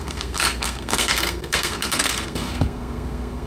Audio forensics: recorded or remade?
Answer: remade